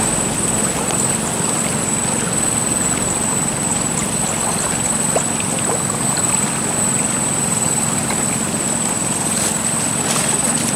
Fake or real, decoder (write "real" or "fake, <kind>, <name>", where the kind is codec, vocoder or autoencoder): real